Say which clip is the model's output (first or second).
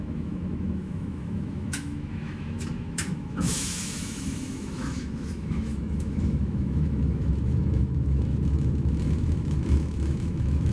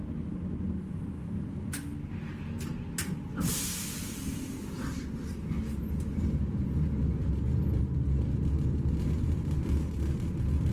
first